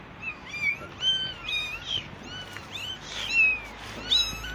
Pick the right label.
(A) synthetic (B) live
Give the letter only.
B